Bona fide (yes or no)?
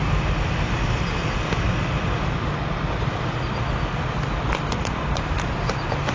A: yes